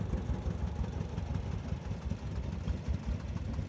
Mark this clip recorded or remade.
recorded